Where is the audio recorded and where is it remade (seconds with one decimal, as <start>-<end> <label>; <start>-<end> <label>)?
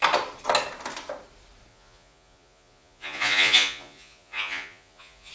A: 0.0-1.7 recorded; 1.7-5.3 remade